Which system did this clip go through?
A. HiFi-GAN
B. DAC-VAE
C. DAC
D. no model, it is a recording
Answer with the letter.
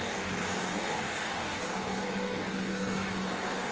C